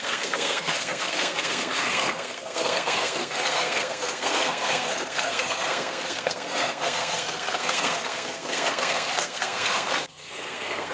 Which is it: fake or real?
fake